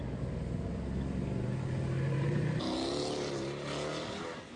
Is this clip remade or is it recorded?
recorded